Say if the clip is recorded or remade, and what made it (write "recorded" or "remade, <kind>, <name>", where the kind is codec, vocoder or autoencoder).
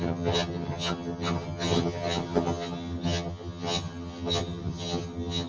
remade, vocoder, HiFi-GAN